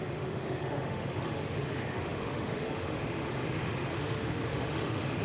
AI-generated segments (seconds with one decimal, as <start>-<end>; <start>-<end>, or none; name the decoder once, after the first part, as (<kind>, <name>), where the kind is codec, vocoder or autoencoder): 0.0-5.2 (autoencoder, DAC-VAE)